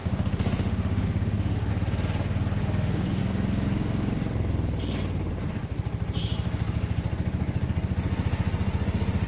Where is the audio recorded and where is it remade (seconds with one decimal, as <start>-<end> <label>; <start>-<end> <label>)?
0.0-1.7 remade; 1.7-2.6 recorded; 2.6-3.2 remade; 3.2-9.3 recorded